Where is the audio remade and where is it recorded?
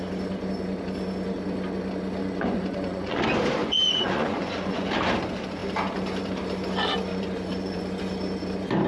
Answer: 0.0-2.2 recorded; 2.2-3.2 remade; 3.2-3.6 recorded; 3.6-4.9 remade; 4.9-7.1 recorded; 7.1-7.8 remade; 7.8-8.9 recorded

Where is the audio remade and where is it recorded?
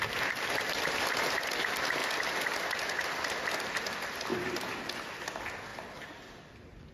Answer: 0.0-4.3 recorded; 4.3-4.8 remade; 4.8-6.9 recorded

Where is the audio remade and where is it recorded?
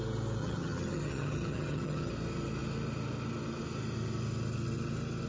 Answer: 0.0-0.4 recorded; 0.4-2.1 remade; 2.1-5.3 recorded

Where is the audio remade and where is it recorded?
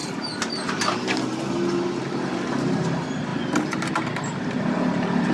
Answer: 0.0-5.3 recorded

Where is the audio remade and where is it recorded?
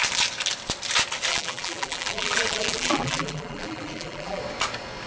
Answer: 0.0-1.3 recorded; 1.3-4.4 remade; 4.4-5.1 recorded